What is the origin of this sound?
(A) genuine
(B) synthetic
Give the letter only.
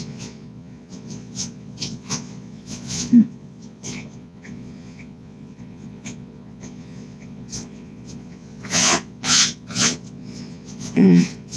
B